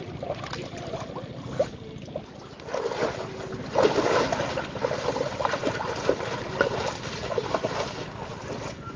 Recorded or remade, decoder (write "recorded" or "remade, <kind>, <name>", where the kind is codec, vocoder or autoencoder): recorded